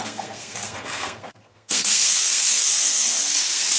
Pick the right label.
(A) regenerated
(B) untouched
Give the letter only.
A